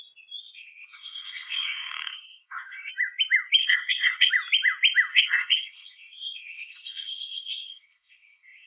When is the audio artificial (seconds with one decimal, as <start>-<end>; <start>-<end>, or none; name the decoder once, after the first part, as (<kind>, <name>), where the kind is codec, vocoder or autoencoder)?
0.4-2.9 (codec, SNAC); 3.6-4.3; 5.1-8.7